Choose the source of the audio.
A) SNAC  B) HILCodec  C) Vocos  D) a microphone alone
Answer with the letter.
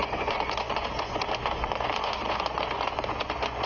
C